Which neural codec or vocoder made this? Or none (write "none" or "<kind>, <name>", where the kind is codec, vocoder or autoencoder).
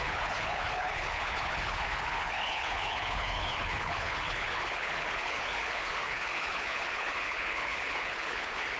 codec, HILCodec